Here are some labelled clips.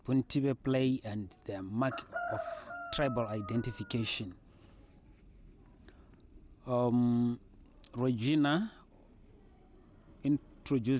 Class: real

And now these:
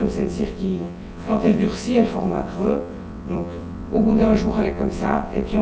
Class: fake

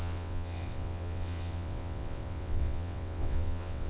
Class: fake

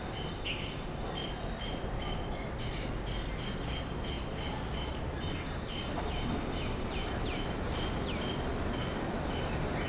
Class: real